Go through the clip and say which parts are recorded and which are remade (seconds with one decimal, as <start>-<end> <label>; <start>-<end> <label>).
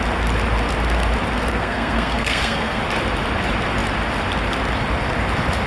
0.0-1.5 recorded; 1.5-2.8 remade; 2.8-5.7 recorded